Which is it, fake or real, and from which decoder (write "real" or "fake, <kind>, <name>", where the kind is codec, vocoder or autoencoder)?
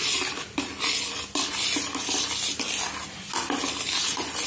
real